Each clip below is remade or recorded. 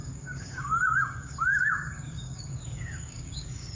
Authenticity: remade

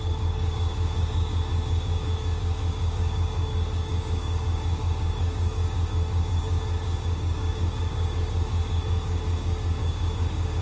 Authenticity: remade